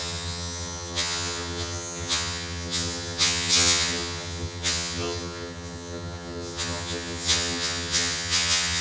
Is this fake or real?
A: fake